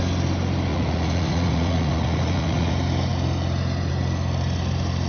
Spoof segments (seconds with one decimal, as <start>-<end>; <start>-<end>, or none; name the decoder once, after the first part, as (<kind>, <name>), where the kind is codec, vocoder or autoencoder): 0.7-2.7 (vocoder, Vocos)